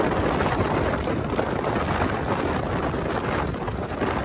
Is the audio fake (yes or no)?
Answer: no